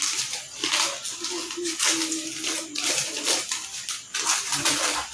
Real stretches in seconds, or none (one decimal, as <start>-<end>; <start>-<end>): 0.0-5.1